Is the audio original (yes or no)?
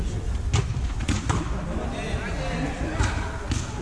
yes